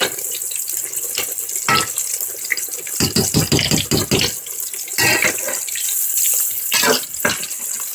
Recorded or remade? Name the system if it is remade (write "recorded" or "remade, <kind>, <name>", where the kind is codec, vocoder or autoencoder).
recorded